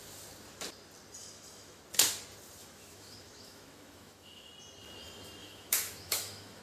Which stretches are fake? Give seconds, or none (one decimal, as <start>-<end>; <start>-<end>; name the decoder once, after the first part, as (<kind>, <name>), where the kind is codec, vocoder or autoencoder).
1.2-1.8 (autoencoder, DAC-VAE); 2.6-4.5; 5.4-6.6

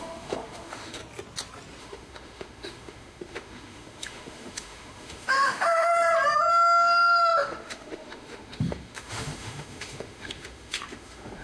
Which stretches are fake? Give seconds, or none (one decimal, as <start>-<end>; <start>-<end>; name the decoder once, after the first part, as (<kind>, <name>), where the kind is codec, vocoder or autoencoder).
0.0-1.0 (autoencoder, DAC-VAE); 1.8-5.9; 6.5-11.4

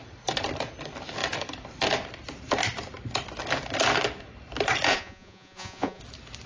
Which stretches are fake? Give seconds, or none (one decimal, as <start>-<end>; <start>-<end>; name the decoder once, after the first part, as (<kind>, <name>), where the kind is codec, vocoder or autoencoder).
4.9-6.0 (vocoder, Vocos)

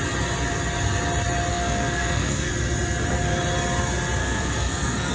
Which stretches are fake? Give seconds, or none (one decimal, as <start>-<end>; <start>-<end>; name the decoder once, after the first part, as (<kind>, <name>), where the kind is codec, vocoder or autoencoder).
1.5-2.5 (codec, SNAC); 4.2-5.1

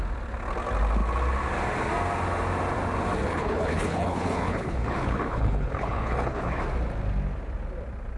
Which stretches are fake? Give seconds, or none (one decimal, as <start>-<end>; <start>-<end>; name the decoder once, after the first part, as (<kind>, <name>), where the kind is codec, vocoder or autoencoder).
3.3-6.6 (codec, HILCodec)

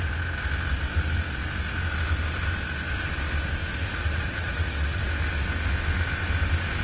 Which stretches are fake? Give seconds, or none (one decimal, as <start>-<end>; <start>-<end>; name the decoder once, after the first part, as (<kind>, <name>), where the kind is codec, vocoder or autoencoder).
3.7-5.0 (vocoder, Vocos)